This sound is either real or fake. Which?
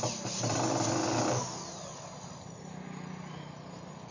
real